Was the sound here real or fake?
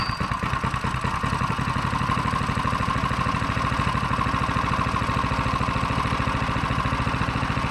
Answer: real